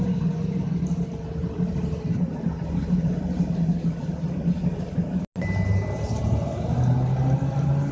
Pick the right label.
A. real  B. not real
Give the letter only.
A